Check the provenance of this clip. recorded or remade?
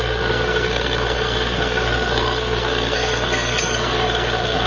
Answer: remade